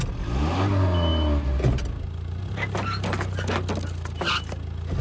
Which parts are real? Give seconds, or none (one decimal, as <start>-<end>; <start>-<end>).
0.0-5.0